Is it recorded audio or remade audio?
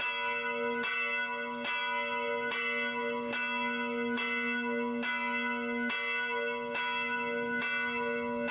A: recorded